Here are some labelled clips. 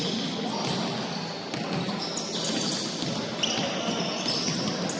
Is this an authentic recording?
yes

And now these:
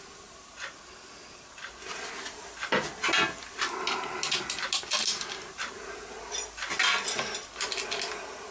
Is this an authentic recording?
yes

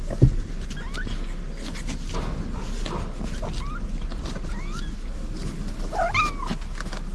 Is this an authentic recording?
yes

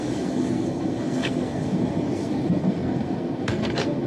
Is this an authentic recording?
no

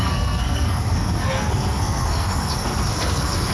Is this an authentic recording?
no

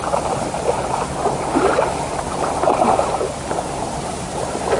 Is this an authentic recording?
yes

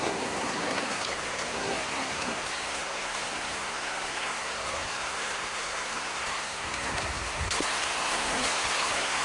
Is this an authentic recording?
no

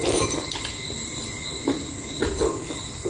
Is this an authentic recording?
yes